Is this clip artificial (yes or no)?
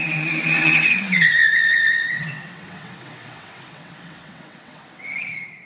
yes